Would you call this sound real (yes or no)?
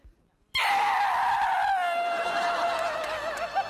no